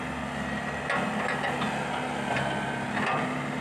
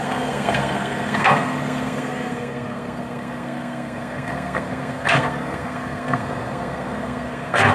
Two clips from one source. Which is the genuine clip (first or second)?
first